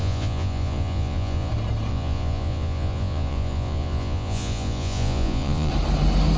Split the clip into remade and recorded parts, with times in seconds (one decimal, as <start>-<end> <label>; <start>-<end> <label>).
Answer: 0.0-1.5 remade; 1.5-1.9 recorded; 1.9-5.7 remade; 5.7-6.4 recorded